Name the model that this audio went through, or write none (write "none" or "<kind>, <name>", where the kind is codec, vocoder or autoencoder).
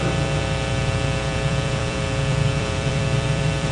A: vocoder, BigVGAN v2